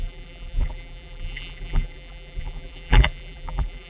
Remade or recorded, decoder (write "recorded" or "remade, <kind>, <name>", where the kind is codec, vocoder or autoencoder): remade, vocoder, BigVGAN v2